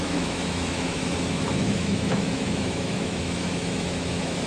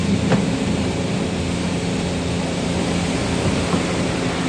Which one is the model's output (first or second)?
first